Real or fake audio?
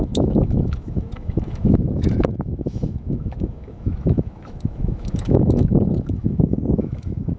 fake